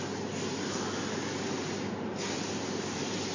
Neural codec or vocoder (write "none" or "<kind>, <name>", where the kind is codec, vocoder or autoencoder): none